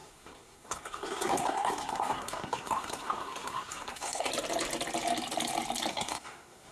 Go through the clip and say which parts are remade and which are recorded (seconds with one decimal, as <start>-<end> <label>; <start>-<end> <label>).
0.0-4.3 remade; 4.3-5.9 recorded; 5.9-6.7 remade